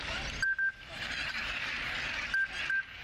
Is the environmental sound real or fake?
real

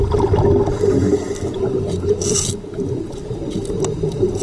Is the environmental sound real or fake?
real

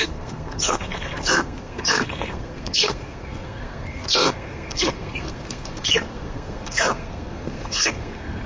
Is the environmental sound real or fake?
fake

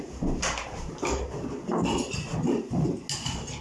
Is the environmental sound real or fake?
real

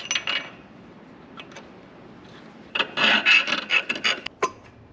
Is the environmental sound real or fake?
real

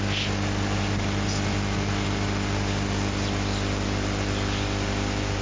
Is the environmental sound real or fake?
real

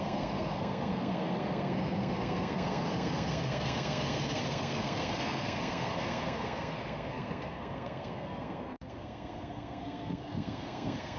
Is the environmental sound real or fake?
fake